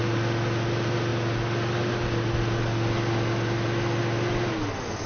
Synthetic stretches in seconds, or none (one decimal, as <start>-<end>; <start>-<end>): none